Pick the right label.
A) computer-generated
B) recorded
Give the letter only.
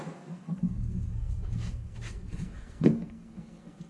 A